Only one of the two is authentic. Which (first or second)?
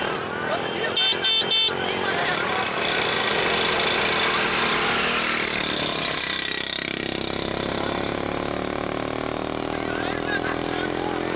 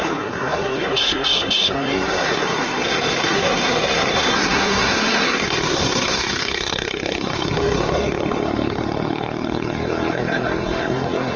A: first